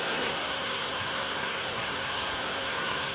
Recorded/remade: remade